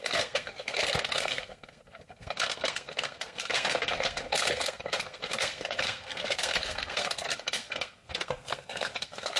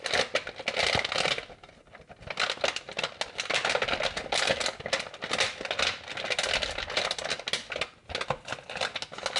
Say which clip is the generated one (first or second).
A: first